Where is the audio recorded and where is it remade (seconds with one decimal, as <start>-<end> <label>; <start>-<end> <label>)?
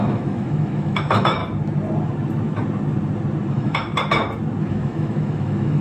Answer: 0.0-1.4 remade; 1.4-3.5 recorded; 3.5-3.9 remade; 3.9-4.7 recorded; 4.7-5.8 remade